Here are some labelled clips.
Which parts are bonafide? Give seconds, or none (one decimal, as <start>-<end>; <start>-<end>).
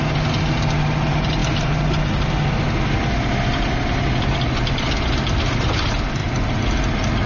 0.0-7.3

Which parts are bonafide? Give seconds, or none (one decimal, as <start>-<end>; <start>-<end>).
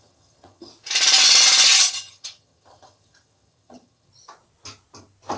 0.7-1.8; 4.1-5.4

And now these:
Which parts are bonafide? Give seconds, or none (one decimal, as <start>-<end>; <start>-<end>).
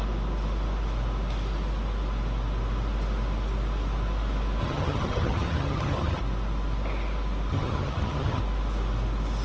0.0-4.6; 6.2-7.5; 8.4-9.4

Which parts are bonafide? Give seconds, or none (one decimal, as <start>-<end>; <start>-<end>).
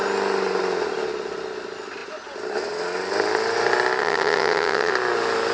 0.0-4.0; 4.9-5.5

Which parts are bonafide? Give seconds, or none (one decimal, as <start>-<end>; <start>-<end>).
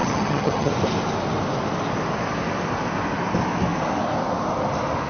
0.7-5.1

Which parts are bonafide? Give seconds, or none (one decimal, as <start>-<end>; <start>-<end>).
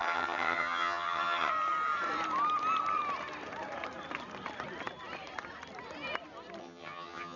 1.5-6.6